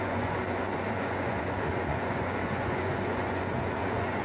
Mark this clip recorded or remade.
remade